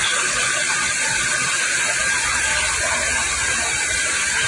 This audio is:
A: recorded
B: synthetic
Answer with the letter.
A